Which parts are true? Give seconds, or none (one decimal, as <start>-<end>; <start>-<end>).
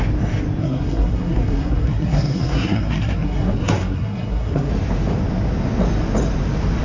0.0-0.6; 4.7-6.8